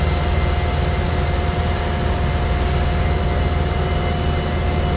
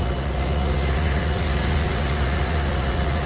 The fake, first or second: second